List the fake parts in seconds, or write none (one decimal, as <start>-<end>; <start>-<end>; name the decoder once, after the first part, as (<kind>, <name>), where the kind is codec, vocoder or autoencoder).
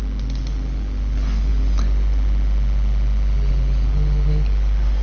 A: none